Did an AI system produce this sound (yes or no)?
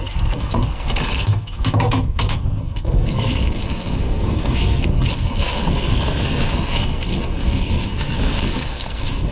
yes